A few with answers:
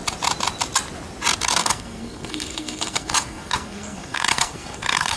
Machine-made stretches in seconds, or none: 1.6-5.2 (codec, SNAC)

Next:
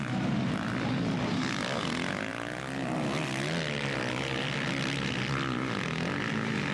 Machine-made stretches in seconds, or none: none